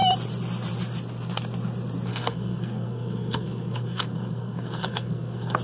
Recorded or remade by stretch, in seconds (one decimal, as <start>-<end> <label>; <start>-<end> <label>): 0.0-2.1 recorded; 2.1-5.6 remade